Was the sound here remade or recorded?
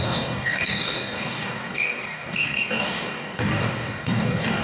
remade